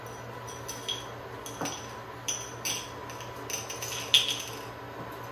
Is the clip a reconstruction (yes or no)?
no